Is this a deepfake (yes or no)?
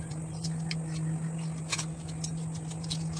no